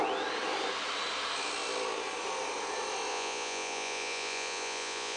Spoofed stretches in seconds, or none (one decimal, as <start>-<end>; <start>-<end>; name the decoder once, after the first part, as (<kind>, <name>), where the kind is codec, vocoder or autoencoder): 3.1-5.2 (vocoder, Vocos)